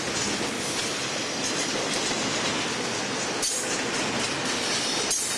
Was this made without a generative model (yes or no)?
yes